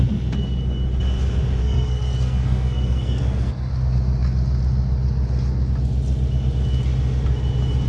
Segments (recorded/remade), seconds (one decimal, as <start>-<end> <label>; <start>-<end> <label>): 0.0-1.6 recorded; 1.6-3.7 remade; 3.7-7.9 recorded